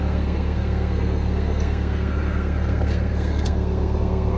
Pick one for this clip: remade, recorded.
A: remade